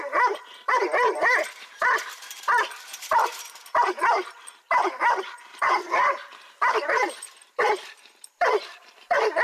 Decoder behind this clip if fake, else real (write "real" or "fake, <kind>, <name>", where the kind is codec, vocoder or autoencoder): fake, vocoder, BigVGAN v2